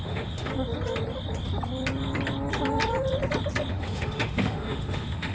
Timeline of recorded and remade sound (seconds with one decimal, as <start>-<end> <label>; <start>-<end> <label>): 0.0-0.5 remade; 0.5-3.7 recorded; 3.7-5.3 remade